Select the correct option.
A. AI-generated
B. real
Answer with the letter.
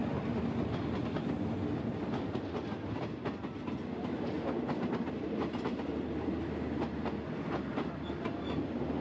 B